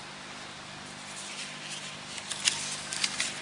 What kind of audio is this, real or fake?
real